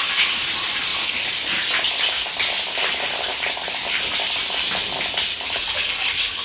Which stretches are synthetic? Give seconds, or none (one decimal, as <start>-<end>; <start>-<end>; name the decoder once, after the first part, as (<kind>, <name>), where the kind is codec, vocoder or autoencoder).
none